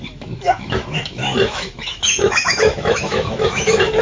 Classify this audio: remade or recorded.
remade